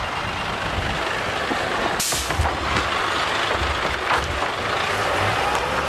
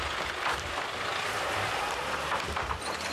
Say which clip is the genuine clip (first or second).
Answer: first